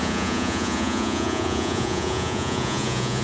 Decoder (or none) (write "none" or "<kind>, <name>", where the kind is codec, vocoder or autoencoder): vocoder, Vocos